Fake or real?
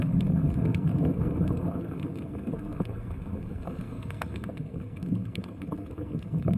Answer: fake